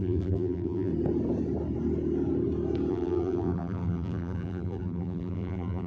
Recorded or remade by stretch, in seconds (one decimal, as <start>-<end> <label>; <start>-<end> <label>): 0.0-0.9 remade; 0.9-2.9 recorded; 2.9-5.9 remade

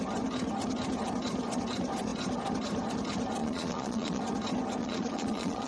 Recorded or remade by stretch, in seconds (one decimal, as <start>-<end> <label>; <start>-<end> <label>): 0.0-3.4 recorded; 3.4-4.2 remade; 4.2-4.8 recorded; 4.8-5.7 remade

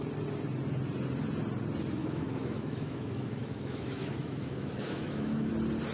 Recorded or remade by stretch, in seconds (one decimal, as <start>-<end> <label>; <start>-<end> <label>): 0.0-2.0 recorded; 2.0-5.5 remade; 5.5-5.9 recorded

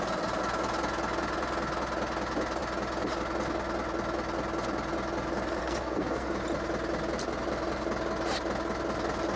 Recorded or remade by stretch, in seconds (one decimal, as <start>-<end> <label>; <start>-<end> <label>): 0.0-5.6 recorded; 5.6-6.3 remade; 6.3-9.4 recorded

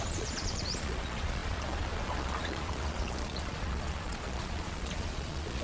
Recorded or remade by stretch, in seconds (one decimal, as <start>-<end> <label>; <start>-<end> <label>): 0.0-5.6 remade